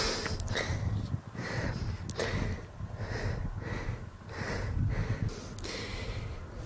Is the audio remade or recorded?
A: recorded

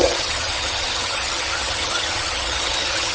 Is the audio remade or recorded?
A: remade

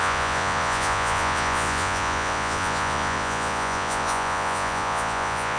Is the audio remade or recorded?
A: remade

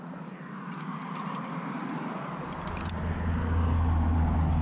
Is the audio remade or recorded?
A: recorded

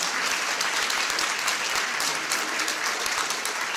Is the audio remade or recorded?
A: recorded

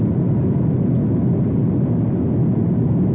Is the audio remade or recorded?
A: recorded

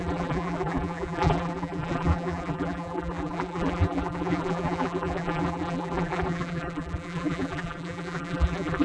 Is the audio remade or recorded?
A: remade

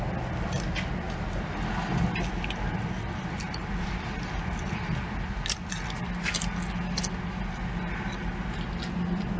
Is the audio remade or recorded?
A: recorded